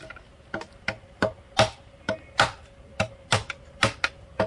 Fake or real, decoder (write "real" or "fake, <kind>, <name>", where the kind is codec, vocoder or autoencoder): real